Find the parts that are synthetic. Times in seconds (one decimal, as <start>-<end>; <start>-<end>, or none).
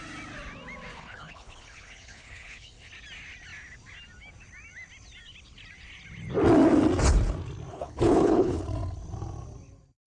0.9-2.9; 7.7-8.6